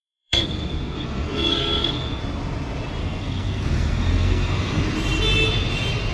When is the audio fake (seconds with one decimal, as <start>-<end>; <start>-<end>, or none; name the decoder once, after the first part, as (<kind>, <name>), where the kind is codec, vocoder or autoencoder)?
0.0-2.2 (codec, SNAC); 3.0-4.8